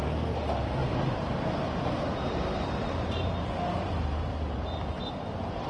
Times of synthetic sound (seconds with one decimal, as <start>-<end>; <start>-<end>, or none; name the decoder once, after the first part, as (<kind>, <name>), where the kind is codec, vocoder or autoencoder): 0.8-2.1 (vocoder, BigVGAN v2)